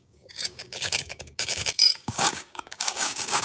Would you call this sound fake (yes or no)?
yes